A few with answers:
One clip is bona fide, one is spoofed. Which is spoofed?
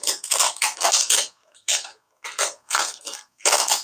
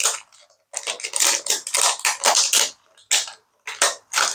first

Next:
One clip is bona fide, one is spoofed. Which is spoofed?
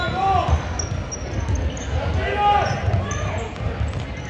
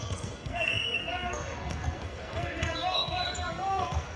second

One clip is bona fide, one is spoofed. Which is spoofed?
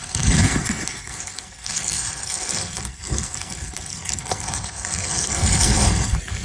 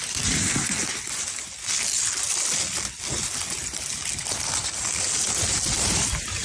first